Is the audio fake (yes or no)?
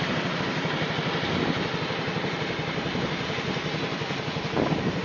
no